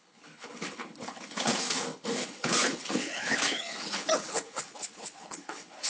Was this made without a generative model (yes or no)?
no